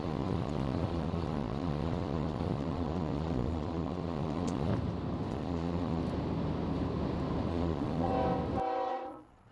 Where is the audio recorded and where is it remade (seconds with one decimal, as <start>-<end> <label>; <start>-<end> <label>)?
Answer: 0.0-4.7 remade; 4.7-5.3 recorded; 5.3-6.0 remade; 6.0-7.5 recorded; 7.5-8.1 remade; 8.1-8.9 recorded; 8.9-9.5 remade